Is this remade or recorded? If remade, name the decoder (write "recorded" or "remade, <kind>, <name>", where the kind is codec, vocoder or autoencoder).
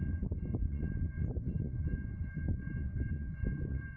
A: remade, vocoder, Vocos